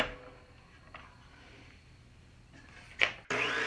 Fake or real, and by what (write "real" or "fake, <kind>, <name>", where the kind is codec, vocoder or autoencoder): real